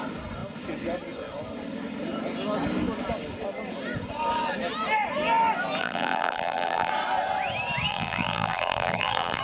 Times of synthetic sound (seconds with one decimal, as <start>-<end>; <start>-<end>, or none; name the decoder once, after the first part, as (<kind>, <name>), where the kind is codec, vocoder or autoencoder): 5.8-6.9 (vocoder, BigVGAN v2); 7.9-9.4